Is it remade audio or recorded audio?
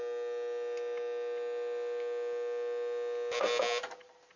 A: recorded